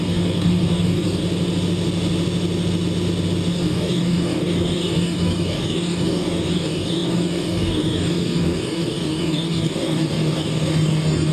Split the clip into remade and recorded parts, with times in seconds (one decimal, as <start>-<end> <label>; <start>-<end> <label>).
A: 0.0-1.2 remade; 1.2-3.5 recorded; 3.5-11.3 remade